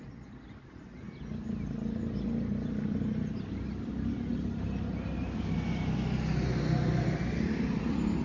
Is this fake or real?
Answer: real